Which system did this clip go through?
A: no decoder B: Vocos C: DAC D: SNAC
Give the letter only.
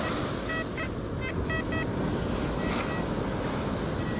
A